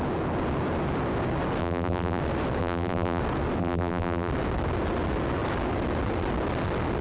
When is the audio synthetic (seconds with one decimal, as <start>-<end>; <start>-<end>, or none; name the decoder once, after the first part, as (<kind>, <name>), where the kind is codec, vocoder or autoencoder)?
1.6-2.2 (vocoder, BigVGAN v2); 2.6-3.2; 3.6-4.3